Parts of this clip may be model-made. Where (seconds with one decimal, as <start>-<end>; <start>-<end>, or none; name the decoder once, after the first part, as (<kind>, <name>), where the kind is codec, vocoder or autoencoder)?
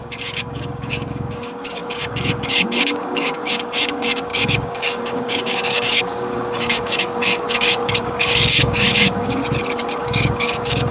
0.0-9.4 (codec, DAC); 10.0-10.9